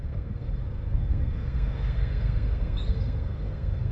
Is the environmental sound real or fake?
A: fake